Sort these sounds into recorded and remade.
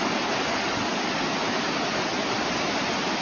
recorded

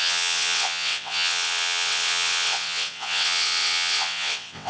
remade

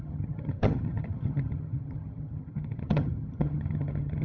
remade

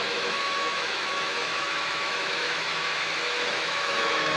remade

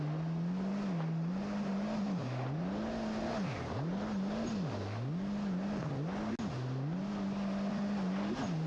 recorded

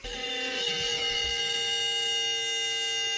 recorded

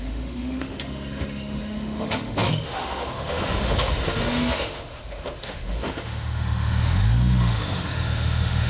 remade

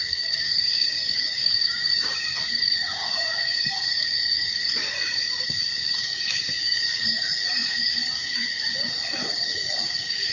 remade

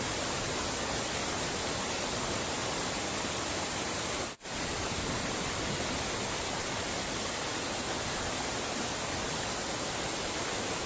recorded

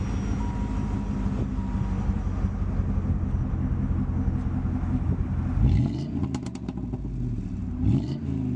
recorded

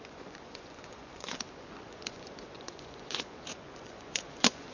remade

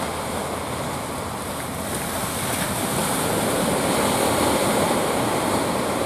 recorded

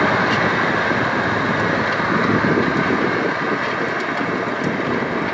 recorded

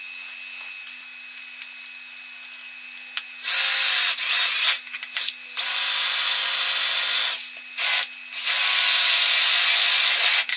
recorded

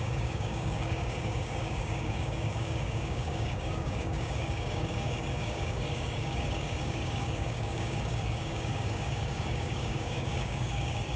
remade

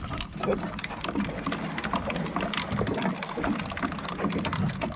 recorded